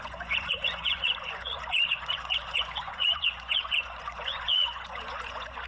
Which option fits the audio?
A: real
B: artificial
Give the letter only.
B